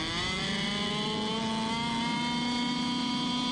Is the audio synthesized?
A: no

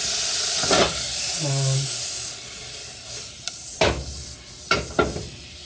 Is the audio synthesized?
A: no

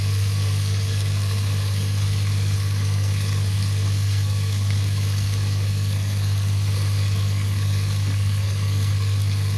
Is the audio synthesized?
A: yes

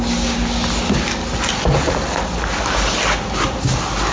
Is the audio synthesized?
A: no